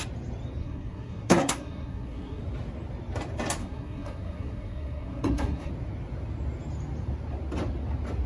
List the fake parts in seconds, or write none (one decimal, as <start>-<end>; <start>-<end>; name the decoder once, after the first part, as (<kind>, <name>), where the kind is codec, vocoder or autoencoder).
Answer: 0.6-2.4 (codec, SNAC); 3.6-5.7